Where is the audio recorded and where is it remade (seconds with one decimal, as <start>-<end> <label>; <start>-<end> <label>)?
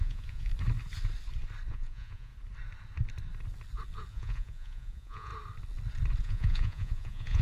0.0-0.5 remade; 0.5-1.7 recorded; 1.7-2.3 remade; 2.3-4.1 recorded; 4.1-5.3 remade; 5.3-6.2 recorded; 6.2-7.4 remade